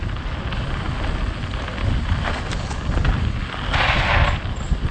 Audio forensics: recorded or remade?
recorded